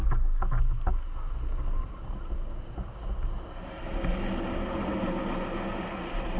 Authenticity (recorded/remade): recorded